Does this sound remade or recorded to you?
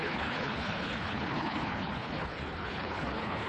remade